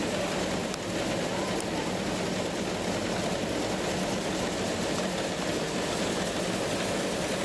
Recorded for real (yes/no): yes